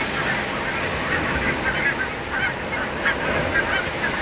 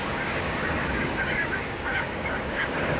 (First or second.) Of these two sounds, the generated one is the second